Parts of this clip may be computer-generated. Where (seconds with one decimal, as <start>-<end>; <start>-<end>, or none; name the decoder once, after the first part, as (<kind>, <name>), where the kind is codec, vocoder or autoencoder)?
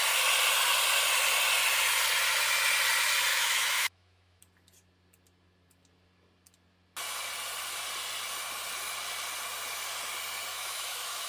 3.3-4.4 (autoencoder, DAC-VAE); 10.5-11.3